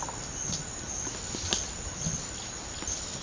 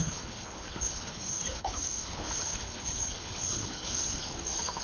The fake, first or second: second